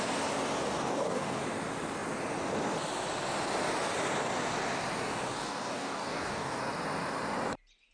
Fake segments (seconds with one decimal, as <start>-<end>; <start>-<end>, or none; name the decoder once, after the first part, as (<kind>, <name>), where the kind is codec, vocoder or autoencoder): 0.6-1.4 (codec, DAC); 5.4-6.6